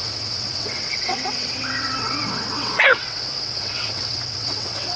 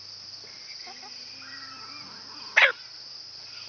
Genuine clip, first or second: second